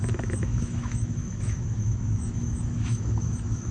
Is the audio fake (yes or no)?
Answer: yes